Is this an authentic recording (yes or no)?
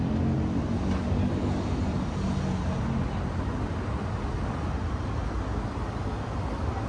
yes